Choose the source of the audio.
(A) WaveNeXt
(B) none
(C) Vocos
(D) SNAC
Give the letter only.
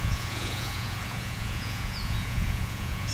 C